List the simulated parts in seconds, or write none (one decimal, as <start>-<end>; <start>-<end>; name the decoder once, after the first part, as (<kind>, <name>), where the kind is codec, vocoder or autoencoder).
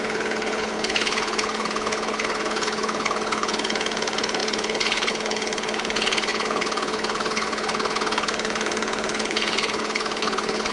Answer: 0.0-10.7 (codec, HILCodec)